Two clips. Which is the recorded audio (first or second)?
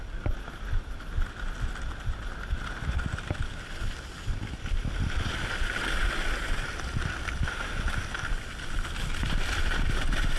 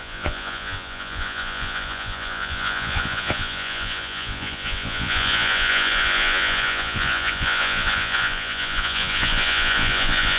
first